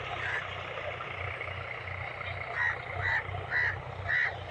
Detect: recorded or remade recorded